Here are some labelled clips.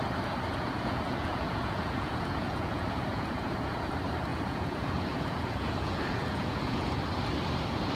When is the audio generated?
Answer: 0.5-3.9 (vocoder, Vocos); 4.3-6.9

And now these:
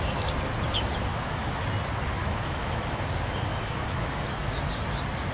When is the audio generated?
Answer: 1.1-1.6 (autoencoder, DAC-VAE); 2.2-3.0; 3.5-4.2

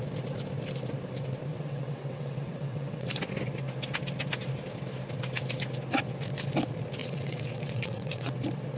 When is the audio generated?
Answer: 1.5-3.2 (vocoder, WaveNeXt); 7.0-8.3

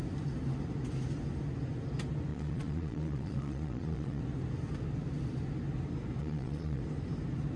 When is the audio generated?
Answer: 2.3-4.2 (vocoder, Vocos); 6.2-6.8

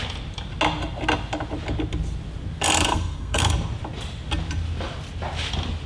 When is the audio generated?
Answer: 2.9-3.5 (codec, SNAC)

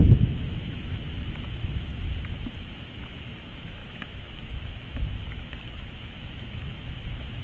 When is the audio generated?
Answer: 0.0-1.9 (autoencoder, DAC-VAE); 2.6-7.4

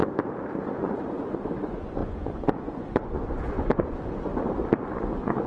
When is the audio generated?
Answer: 0.6-4.3 (vocoder, Vocos); 4.9-5.5

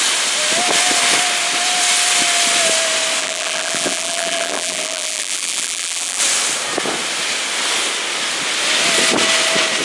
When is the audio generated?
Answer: 3.2-6.2 (vocoder, BigVGAN v2)